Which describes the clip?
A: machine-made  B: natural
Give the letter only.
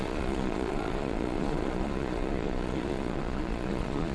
A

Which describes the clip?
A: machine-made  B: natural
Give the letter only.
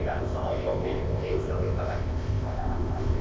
A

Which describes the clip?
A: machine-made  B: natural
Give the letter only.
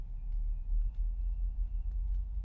B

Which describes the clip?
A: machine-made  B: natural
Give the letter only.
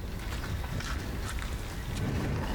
B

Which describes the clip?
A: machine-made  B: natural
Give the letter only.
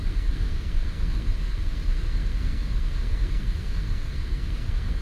A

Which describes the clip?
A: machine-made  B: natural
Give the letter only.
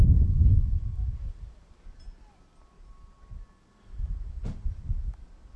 B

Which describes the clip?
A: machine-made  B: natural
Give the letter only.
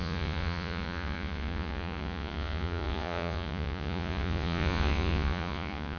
A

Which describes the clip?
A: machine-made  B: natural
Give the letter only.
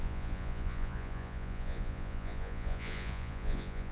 A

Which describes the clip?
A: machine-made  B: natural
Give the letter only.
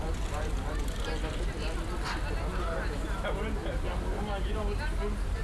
B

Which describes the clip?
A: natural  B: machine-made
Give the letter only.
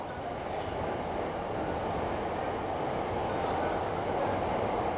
A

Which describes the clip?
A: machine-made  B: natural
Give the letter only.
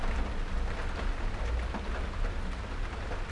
B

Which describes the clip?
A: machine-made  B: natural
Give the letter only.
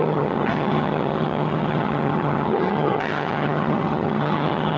A